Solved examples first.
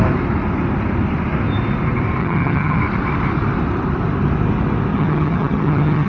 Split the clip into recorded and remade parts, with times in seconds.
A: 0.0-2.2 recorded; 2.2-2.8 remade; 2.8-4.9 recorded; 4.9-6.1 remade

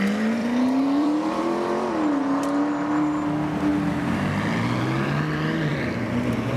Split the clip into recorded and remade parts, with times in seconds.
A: 0.0-0.4 recorded; 0.4-1.9 remade; 1.9-5.7 recorded; 5.7-6.6 remade

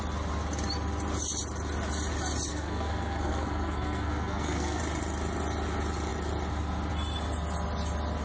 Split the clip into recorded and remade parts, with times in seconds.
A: 0.0-2.5 recorded; 2.5-4.8 remade; 4.8-8.2 recorded